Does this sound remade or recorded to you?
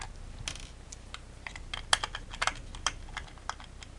recorded